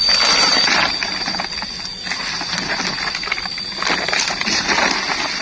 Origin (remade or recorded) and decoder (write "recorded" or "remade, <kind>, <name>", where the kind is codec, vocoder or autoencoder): recorded